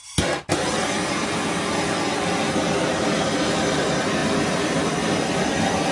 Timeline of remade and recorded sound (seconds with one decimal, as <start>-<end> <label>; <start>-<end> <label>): 0.0-5.9 recorded